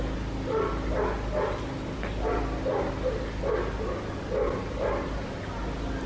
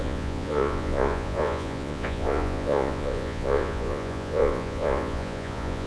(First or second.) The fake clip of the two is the second